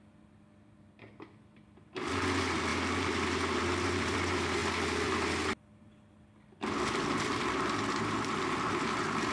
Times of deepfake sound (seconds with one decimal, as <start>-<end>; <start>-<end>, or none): 0.0-2.7; 3.6-9.3